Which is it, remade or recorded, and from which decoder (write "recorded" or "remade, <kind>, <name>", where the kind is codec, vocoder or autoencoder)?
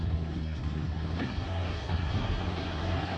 remade, codec, SNAC